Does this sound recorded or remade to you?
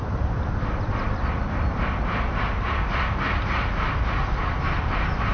recorded